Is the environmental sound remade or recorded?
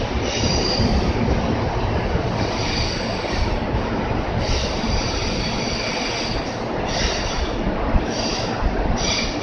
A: recorded